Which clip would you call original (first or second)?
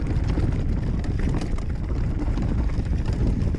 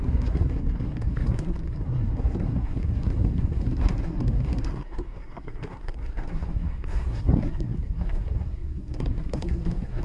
first